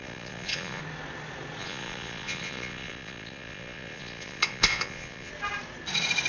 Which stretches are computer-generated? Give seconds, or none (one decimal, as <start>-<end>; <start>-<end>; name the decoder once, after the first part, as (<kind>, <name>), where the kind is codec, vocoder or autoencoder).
0.0-0.8 (vocoder, Vocos); 1.6-5.3